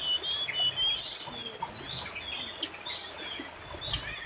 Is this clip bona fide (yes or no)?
yes